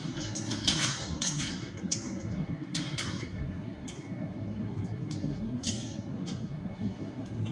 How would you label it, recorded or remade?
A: remade